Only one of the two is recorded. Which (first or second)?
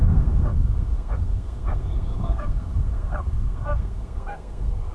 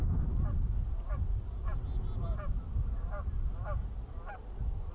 second